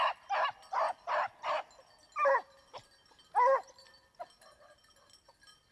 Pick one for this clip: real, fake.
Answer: real